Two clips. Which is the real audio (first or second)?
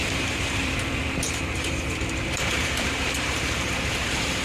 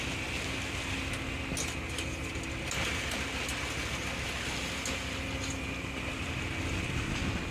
second